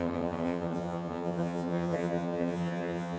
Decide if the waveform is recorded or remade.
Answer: remade